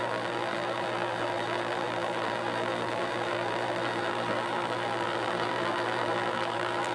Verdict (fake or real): fake